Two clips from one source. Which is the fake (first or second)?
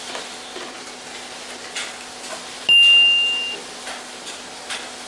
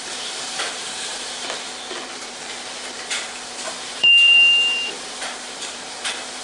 second